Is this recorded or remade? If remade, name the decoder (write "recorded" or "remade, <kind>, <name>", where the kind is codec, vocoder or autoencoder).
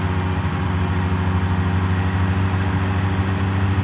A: recorded